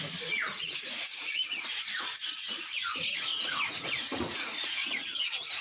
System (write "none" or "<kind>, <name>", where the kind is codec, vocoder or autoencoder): vocoder, Vocos